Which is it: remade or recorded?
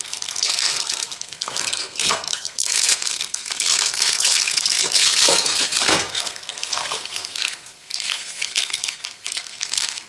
remade